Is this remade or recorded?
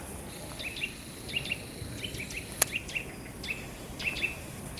remade